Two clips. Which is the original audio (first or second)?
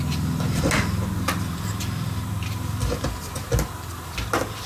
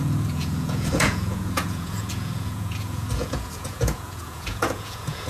first